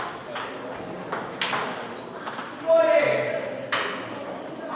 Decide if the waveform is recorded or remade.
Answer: recorded